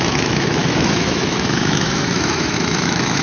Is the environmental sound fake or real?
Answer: fake